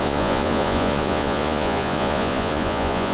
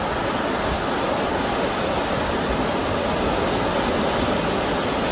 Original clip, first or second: second